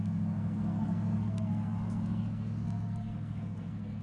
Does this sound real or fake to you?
fake